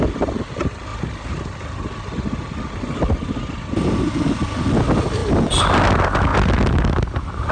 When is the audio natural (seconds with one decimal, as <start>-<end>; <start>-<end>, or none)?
0.0-7.5